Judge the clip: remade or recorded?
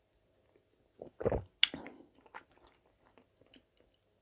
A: recorded